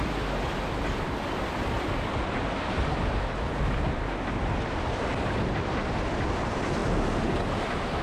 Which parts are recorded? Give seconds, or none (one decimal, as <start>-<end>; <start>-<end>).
0.0-8.0